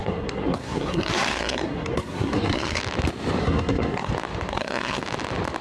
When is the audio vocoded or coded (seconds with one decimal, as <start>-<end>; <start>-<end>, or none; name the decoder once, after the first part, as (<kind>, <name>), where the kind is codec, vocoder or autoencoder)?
0.0-2.8 (codec, SNAC); 3.4-4.1; 4.5-5.0